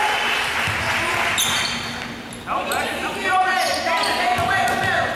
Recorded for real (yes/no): yes